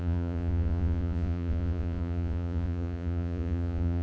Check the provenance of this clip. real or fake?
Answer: fake